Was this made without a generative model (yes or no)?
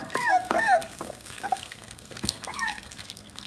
no